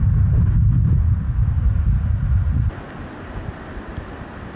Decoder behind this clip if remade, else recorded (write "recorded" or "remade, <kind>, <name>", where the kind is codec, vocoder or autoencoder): recorded